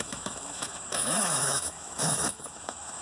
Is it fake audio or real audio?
fake